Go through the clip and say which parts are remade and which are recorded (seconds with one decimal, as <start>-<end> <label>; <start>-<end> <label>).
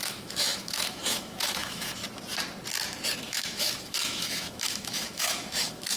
0.0-2.0 remade; 2.0-3.2 recorded; 3.2-6.0 remade